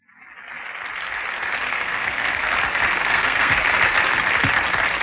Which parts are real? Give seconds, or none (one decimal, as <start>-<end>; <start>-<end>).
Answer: 0.0-1.7; 2.4-3.0; 3.5-5.0